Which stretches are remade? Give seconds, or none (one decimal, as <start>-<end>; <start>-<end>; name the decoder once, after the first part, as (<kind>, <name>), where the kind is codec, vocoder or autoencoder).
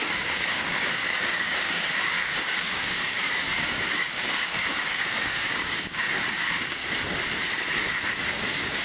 0.0-6.8 (codec, DAC); 8.2-8.8